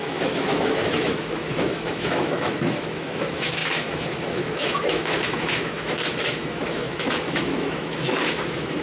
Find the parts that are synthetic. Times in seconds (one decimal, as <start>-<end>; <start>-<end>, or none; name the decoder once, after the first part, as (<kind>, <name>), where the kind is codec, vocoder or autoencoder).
0.0-8.8 (autoencoder, DAC-VAE)